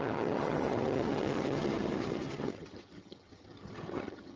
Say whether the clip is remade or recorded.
remade